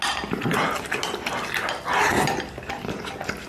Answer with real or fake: real